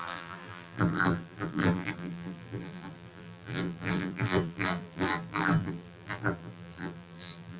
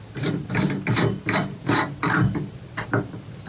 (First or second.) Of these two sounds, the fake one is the first